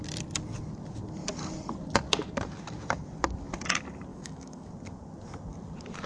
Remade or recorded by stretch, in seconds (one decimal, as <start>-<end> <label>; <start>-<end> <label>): 0.0-4.1 recorded; 4.1-4.7 remade; 4.7-6.1 recorded

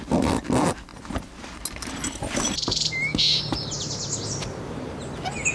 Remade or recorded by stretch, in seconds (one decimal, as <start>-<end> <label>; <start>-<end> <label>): 0.0-5.5 recorded